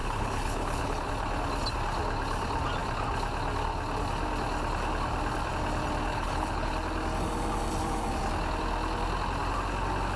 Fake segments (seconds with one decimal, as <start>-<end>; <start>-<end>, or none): 0.0-1.1; 6.1-6.7